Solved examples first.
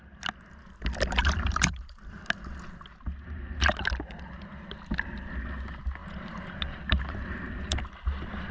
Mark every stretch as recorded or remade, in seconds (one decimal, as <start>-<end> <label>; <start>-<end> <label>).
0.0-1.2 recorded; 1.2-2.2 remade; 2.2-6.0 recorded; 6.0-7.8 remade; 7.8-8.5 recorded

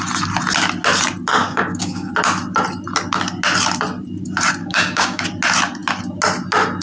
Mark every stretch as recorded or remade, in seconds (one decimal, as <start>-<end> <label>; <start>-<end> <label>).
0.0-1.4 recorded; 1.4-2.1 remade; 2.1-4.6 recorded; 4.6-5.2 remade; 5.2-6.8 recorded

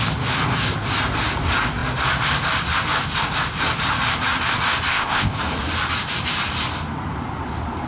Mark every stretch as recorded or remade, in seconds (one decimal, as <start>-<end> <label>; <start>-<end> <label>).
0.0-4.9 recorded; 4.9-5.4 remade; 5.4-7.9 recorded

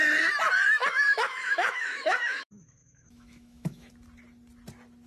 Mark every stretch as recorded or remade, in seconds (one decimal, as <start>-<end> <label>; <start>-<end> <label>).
0.0-0.8 recorded; 0.8-3.9 remade; 3.9-5.1 recorded

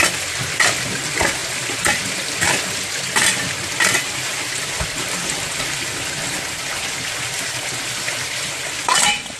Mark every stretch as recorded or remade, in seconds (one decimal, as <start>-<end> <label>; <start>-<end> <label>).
0.0-9.4 remade